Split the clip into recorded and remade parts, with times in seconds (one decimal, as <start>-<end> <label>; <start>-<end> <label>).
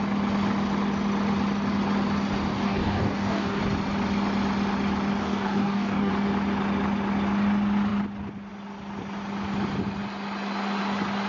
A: 0.0-2.5 recorded; 2.5-3.6 remade; 3.6-5.2 recorded; 5.2-6.1 remade; 6.1-11.3 recorded